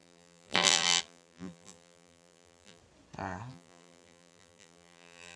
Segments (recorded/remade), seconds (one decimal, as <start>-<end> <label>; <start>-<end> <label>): 0.0-2.8 remade; 2.8-3.5 recorded; 3.5-5.4 remade